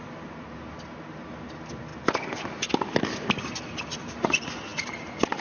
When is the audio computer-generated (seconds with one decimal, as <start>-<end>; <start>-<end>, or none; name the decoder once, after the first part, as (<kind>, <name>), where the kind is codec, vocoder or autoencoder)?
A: none